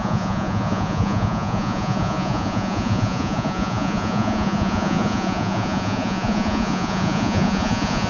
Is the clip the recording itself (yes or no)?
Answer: no